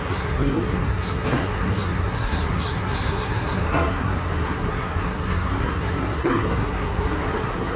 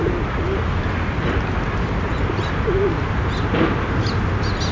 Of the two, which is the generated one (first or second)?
first